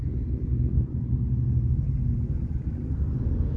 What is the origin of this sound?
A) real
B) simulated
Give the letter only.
A